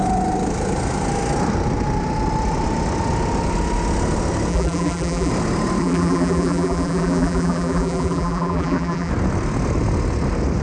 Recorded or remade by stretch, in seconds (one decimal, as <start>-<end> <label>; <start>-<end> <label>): 0.0-4.5 recorded; 4.5-5.3 remade; 5.3-5.8 recorded; 5.8-9.1 remade; 9.1-10.6 recorded

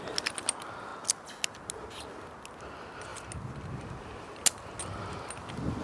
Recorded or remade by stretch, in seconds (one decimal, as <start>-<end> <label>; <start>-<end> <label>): 0.0-5.8 recorded